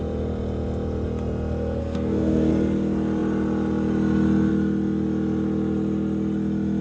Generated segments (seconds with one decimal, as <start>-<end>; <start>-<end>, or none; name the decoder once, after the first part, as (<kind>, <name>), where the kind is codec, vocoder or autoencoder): 1.8-2.5 (codec, SNAC)